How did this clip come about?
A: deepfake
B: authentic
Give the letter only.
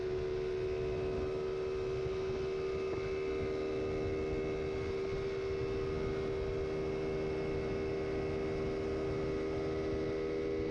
B